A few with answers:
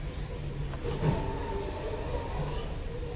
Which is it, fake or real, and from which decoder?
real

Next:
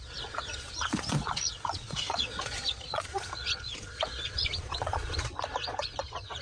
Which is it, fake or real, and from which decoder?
fake, vocoder, Vocos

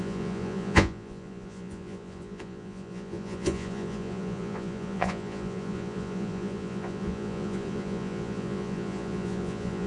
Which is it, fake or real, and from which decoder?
fake, vocoder, Vocos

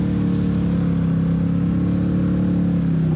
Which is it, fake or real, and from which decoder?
real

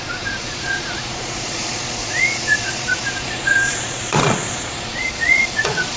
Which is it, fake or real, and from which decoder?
fake, vocoder, Vocos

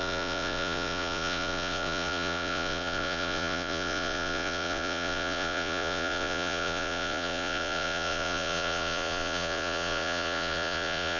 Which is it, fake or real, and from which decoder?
fake, vocoder, Vocos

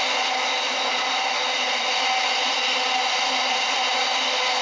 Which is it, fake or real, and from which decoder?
real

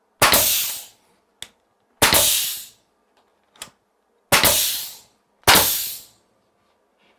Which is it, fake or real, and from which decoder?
real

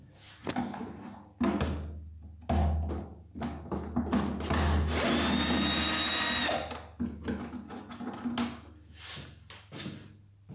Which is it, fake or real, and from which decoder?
real